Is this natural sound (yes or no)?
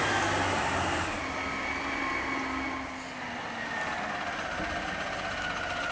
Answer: yes